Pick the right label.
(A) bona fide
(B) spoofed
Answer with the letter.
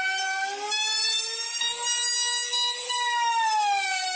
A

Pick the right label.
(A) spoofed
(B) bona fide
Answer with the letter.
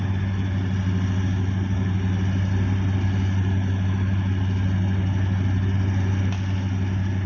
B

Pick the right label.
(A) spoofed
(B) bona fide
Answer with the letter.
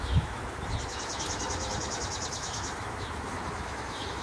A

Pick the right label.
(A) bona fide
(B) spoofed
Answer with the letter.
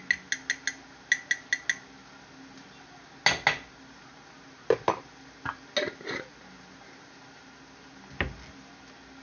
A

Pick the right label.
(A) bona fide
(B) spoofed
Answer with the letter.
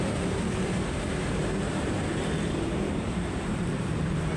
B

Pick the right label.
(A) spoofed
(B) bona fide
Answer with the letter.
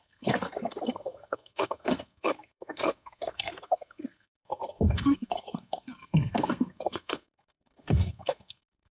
A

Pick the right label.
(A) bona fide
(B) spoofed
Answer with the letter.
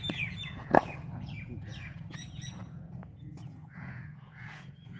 B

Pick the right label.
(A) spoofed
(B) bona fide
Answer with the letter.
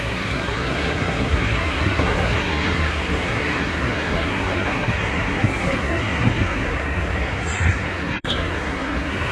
A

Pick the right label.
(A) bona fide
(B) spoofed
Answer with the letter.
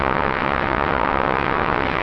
B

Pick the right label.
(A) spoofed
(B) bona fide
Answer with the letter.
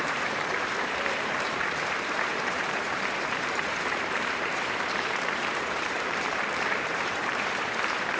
A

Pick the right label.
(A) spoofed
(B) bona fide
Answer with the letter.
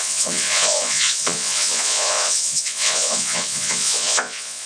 A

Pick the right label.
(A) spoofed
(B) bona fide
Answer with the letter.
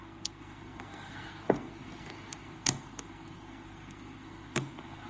A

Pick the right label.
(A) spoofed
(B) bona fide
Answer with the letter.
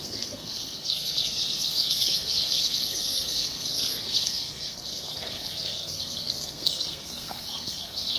A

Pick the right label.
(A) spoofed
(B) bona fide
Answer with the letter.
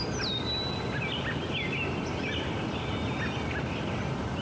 B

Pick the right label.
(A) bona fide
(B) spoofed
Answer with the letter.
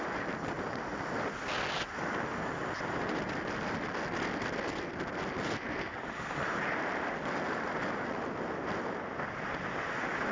A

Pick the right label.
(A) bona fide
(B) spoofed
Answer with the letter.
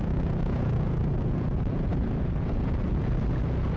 B